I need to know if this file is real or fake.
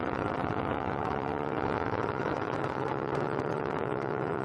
fake